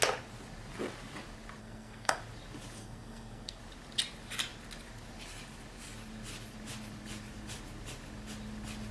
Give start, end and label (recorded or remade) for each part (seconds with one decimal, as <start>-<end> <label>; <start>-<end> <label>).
0.0-1.6 recorded; 1.6-2.2 remade; 2.2-2.8 recorded; 2.8-3.6 remade; 3.6-8.9 recorded